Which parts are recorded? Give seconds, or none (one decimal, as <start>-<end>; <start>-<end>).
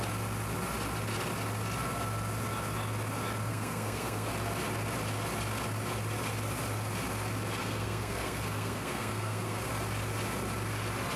0.0-3.5; 4.3-7.6; 9.7-11.2